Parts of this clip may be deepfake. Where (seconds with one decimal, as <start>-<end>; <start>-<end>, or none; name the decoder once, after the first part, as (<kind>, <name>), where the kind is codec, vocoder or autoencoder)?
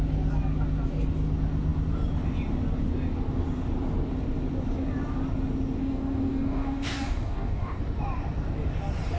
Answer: 5.8-7.8 (codec, DAC)